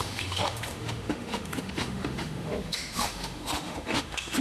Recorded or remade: remade